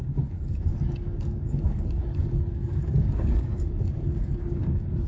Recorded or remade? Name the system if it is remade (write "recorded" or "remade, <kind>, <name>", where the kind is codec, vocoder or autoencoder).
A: remade, codec, DAC